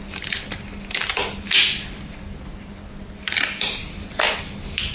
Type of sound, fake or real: real